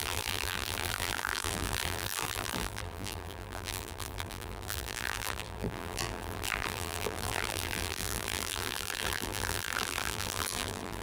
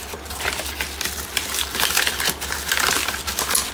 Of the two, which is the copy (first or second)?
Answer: first